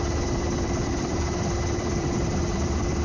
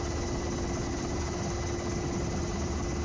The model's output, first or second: first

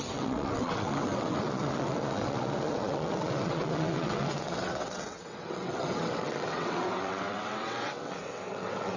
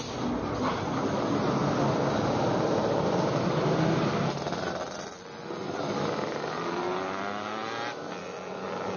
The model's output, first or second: first